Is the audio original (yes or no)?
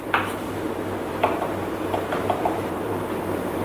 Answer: no